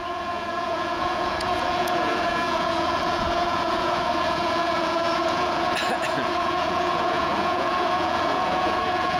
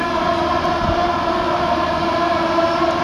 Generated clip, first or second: first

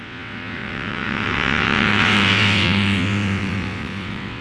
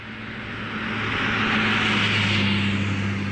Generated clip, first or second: first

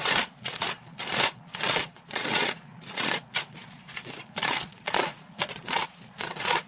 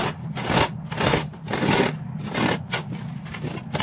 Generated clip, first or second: first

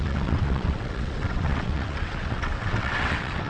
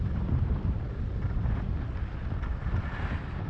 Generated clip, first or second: first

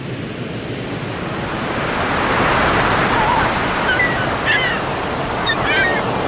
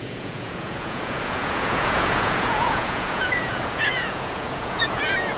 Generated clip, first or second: second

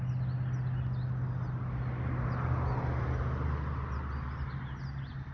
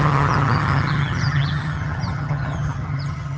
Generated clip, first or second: second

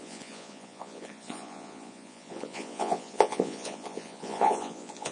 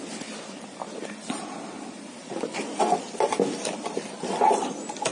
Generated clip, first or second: first